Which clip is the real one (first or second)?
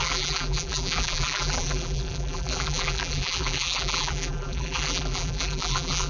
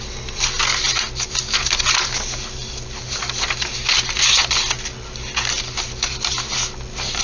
second